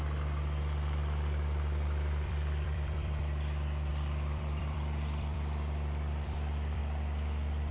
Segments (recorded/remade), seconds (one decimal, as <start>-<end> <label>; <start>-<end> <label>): 0.0-3.2 remade; 3.2-3.9 recorded; 3.9-6.8 remade; 6.8-7.7 recorded